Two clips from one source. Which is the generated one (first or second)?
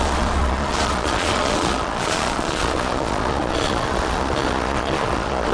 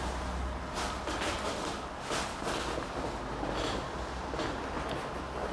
first